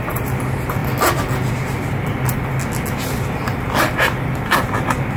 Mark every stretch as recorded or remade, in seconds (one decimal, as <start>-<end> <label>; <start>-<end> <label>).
0.0-5.2 recorded